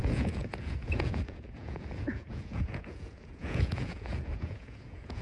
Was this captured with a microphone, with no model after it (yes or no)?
no